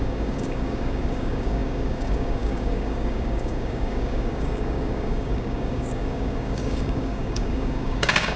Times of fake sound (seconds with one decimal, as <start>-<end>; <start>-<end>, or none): 0.0-8.4